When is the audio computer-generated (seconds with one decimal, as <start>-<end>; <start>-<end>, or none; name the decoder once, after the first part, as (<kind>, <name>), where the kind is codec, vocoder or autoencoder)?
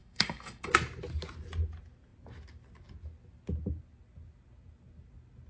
0.0-0.7 (codec, DAC)